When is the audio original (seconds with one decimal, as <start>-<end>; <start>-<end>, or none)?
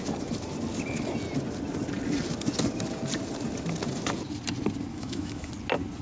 0.0-4.9; 5.5-6.0